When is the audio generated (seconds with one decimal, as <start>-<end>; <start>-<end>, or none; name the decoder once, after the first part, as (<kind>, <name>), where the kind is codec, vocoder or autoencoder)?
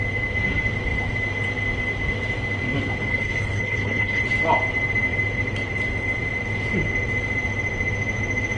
3.1-4.2 (codec, HILCodec)